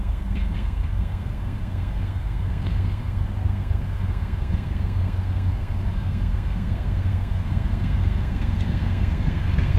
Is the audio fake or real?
fake